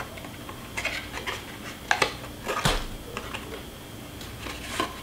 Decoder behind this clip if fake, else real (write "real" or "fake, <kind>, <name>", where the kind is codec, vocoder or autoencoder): real